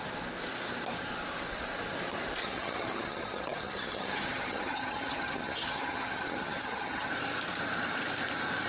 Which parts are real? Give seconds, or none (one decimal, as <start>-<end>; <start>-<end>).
0.0-2.4; 7.1-8.7